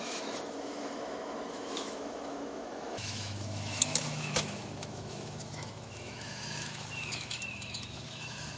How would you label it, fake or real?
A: fake